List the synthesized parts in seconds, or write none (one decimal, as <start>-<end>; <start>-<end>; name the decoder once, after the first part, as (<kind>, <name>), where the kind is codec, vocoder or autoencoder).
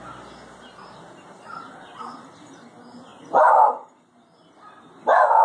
none